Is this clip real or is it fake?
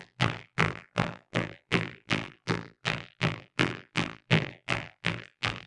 fake